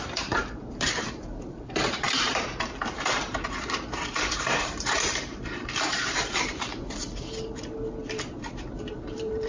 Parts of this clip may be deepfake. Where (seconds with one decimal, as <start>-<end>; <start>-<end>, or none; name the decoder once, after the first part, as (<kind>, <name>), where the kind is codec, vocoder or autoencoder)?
0.0-6.7 (vocoder, BigVGAN v2); 8.9-9.5

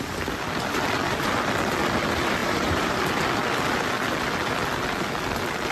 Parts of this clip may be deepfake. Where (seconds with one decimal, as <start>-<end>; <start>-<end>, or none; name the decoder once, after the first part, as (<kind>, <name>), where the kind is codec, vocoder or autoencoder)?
2.4-3.0 (vocoder, BigVGAN v2)

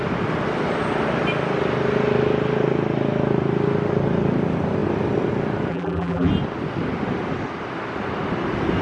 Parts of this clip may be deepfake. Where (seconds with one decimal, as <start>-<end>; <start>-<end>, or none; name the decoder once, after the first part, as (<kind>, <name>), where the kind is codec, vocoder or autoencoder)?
5.7-6.3 (vocoder, BigVGAN v2)

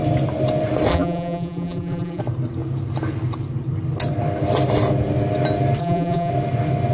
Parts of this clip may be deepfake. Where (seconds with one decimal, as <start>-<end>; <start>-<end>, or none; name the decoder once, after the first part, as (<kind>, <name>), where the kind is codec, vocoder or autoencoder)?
0.9-2.2 (vocoder, BigVGAN v2); 5.8-6.3